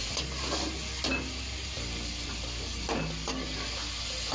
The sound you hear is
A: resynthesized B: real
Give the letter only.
B